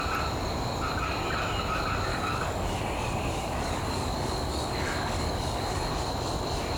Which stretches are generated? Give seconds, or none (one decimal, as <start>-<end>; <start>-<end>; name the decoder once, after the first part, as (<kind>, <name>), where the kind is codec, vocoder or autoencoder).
2.1-5.9 (codec, DAC)